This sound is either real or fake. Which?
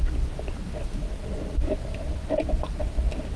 real